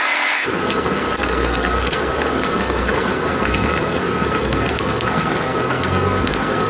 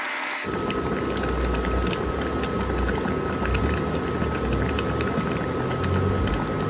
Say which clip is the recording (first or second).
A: second